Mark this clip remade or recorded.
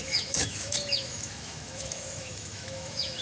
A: remade